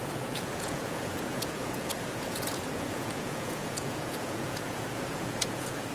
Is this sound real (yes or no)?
no